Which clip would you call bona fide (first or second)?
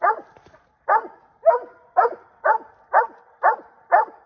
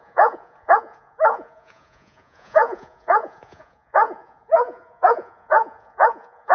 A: first